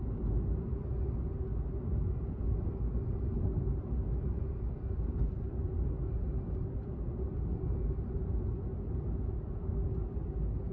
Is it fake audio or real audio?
real